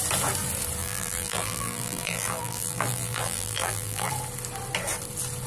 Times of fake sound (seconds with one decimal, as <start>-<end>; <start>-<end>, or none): 0.8-4.1